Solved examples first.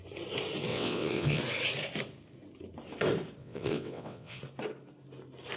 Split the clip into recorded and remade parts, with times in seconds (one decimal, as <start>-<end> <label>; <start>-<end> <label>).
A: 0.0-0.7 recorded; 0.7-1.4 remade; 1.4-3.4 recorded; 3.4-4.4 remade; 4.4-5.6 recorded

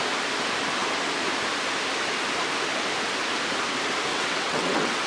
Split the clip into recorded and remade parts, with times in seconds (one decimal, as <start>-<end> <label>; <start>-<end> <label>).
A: 0.0-4.1 recorded; 4.1-5.1 remade

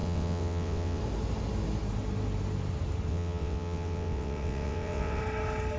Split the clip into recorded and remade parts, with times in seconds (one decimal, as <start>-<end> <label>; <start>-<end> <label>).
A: 0.0-1.0 remade; 1.0-3.1 recorded; 3.1-5.2 remade; 5.2-5.8 recorded

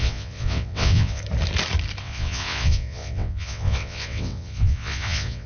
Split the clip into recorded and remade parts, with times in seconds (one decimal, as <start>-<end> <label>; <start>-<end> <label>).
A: 0.0-1.2 remade; 1.2-2.0 recorded; 2.0-5.5 remade

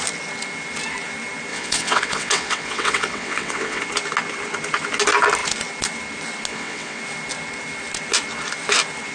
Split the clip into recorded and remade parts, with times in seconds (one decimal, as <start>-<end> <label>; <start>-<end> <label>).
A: 0.0-1.5 recorded; 1.5-3.8 remade; 3.8-6.5 recorded; 6.5-7.0 remade; 7.0-9.1 recorded

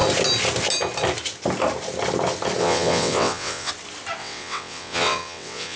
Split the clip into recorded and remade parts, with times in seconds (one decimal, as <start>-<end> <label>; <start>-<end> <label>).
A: 0.0-2.6 recorded; 2.6-3.7 remade; 3.7-4.2 recorded; 4.2-5.8 remade

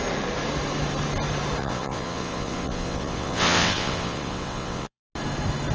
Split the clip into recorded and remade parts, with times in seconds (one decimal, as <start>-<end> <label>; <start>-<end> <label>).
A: 0.0-1.6 recorded; 1.6-5.0 remade; 5.0-5.7 recorded

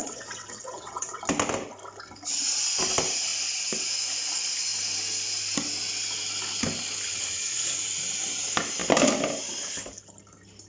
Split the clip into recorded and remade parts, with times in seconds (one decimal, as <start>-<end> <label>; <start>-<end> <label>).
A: 0.0-1.2 remade; 1.2-10.7 recorded